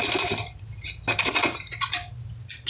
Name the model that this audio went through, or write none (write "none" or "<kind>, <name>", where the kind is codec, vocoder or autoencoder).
none